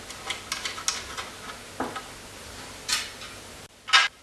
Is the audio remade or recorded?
recorded